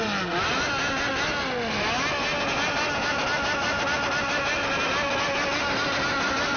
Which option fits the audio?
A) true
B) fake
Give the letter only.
A